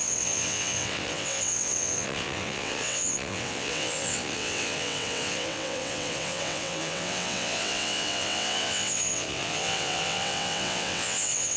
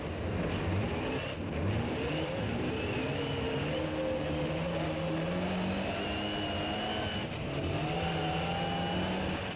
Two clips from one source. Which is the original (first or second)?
second